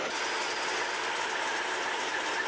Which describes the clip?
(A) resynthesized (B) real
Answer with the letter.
B